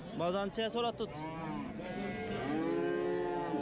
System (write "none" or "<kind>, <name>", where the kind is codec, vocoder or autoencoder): none